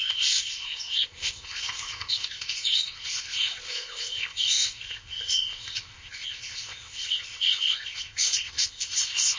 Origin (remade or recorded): remade